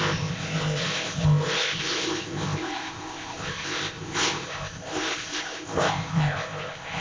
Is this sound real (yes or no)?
no